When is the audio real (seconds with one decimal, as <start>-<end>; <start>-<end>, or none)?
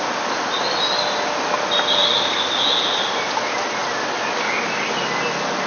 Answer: 0.0-5.7